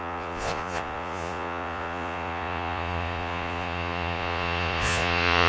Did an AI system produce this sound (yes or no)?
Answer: yes